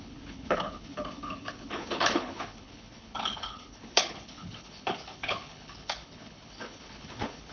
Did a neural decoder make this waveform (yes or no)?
yes